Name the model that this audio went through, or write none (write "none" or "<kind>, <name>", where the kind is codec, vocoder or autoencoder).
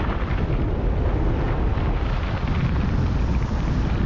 none